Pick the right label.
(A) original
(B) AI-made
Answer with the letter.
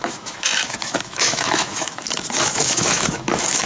B